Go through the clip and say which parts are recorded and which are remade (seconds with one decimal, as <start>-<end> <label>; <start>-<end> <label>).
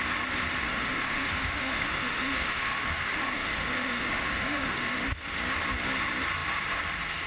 0.0-0.6 recorded; 0.6-5.0 remade; 5.0-7.3 recorded